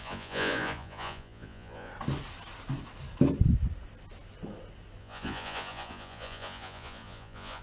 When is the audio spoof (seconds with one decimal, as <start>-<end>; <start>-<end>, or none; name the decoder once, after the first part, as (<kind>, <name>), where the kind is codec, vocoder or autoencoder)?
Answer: 0.0-1.9 (vocoder, Vocos); 5.0-7.6